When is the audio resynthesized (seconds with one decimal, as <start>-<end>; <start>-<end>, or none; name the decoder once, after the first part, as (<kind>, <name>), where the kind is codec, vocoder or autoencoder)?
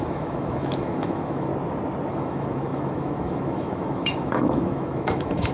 0.0-1.5 (autoencoder, DAC-VAE); 2.1-5.5